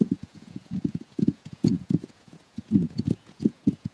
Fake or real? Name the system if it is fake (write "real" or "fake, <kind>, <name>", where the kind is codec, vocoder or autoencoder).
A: fake, vocoder, Vocos